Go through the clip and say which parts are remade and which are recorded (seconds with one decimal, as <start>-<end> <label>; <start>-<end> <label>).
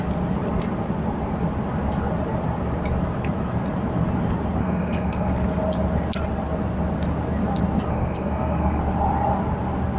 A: 0.0-4.6 recorded; 4.6-5.3 remade; 5.3-7.9 recorded; 7.9-8.8 remade; 8.8-10.0 recorded